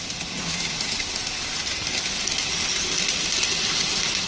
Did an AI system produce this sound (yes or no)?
no